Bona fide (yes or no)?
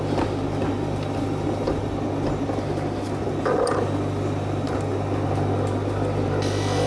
yes